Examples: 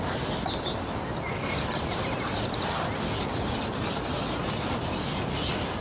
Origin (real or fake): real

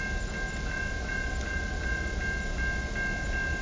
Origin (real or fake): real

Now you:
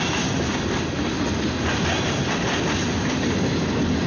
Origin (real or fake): real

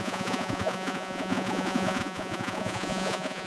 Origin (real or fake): fake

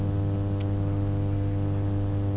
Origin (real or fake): real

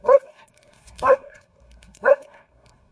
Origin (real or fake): fake